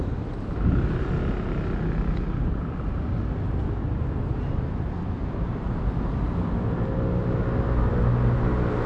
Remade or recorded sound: recorded